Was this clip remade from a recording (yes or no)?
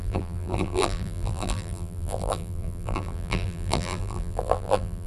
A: yes